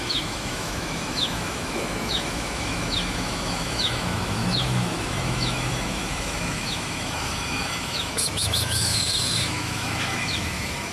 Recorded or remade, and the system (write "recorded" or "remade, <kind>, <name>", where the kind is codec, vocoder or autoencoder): remade, autoencoder, DAC-VAE